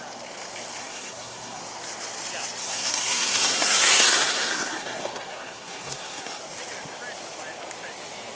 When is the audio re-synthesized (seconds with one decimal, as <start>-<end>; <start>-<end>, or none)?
0.8-1.6; 2.6-6.4